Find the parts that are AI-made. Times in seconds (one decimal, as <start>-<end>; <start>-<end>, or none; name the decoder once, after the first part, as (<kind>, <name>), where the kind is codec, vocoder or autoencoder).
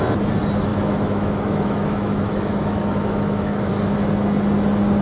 0.7-3.7 (autoencoder, DAC-VAE)